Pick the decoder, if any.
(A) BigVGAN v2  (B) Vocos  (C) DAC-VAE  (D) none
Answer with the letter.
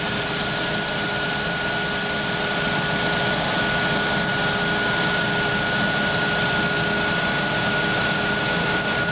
D